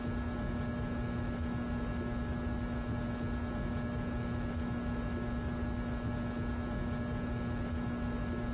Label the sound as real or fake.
real